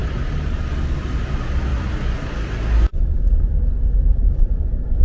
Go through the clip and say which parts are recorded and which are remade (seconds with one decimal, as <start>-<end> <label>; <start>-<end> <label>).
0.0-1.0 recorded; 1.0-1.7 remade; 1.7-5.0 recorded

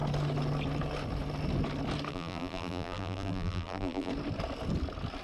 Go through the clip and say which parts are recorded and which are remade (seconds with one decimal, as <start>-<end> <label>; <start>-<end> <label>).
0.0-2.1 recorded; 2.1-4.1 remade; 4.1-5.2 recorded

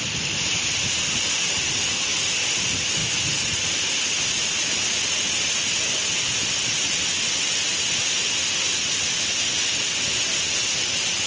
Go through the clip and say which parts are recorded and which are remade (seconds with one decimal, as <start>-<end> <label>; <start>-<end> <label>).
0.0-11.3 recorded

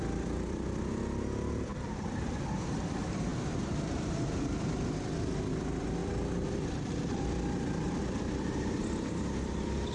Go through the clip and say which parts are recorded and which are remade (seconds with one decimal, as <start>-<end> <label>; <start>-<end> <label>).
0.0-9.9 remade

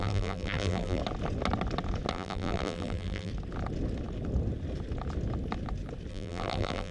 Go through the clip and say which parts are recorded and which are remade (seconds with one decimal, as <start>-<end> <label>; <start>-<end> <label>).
0.0-1.0 remade; 1.0-2.1 recorded; 2.1-3.3 remade; 3.3-6.1 recorded; 6.1-6.9 remade